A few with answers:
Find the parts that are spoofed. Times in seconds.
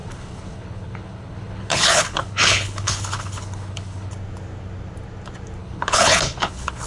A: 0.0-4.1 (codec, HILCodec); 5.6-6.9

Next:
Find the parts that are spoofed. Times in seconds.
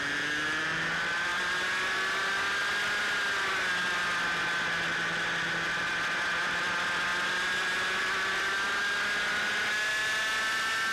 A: none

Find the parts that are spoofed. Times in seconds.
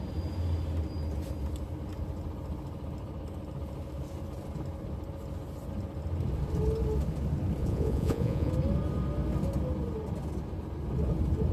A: 7.6-8.5 (vocoder, Vocos)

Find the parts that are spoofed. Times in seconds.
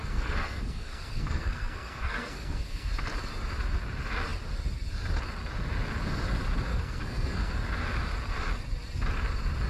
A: 0.0-2.9 (codec, SNAC); 6.7-7.5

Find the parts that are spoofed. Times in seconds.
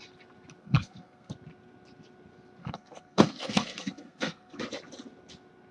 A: 0.6-1.3 (codec, SNAC); 2.6-4.6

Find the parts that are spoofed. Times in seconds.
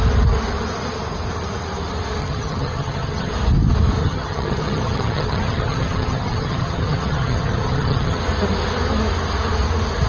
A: 2.2-3.3 (vocoder, HiFi-GAN); 4.0-8.2